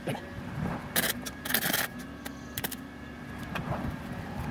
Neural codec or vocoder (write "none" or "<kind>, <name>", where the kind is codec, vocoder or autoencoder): none